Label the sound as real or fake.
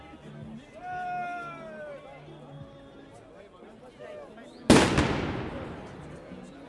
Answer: real